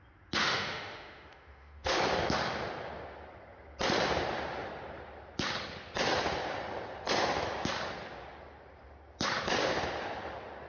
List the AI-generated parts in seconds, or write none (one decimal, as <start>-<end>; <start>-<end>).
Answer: 0.4-2.0